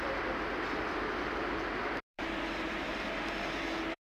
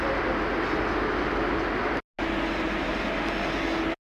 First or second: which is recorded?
second